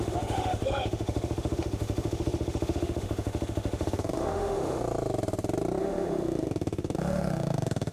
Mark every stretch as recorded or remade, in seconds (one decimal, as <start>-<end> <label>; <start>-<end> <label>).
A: 0.0-4.8 remade; 4.8-5.8 recorded; 5.8-7.9 remade